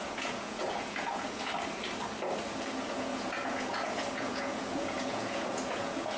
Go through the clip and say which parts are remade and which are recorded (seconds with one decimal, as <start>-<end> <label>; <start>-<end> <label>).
0.0-1.5 remade; 1.5-2.8 recorded; 2.8-6.2 remade